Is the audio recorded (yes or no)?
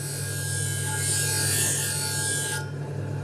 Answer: yes